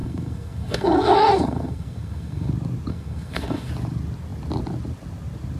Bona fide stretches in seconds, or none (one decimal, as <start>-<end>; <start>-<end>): 2.5-2.9; 3.7-5.6